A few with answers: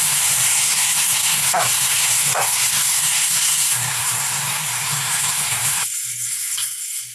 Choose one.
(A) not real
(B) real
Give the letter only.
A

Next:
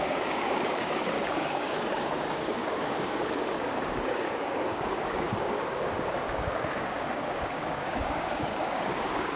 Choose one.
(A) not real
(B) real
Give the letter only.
A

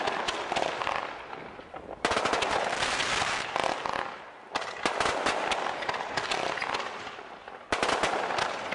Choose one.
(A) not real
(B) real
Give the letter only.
B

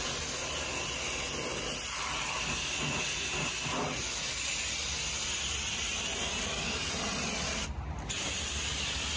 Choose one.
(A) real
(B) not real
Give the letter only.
A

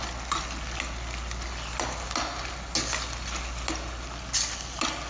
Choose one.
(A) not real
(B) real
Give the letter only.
B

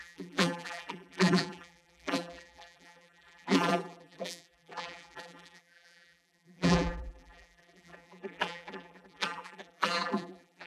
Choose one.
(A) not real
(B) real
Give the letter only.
A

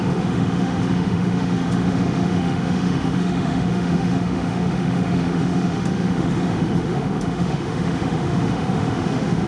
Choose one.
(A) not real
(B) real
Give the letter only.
A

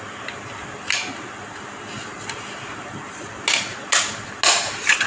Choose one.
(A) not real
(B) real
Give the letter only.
B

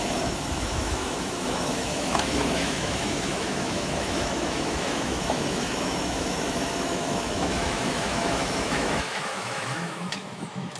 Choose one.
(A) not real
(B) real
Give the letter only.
A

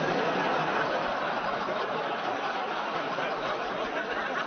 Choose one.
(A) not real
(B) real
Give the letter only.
B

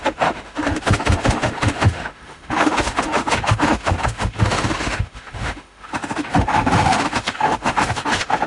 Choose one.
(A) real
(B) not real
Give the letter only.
B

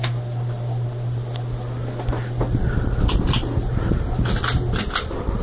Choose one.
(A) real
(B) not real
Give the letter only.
A